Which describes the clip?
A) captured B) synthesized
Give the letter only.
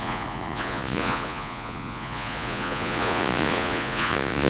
B